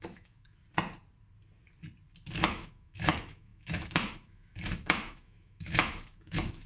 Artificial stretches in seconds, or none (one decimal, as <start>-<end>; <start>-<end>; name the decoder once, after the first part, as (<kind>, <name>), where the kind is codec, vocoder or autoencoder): 0.0-0.6 (autoencoder, DAC-VAE); 2.3-6.7